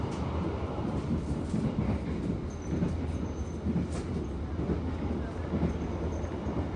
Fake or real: real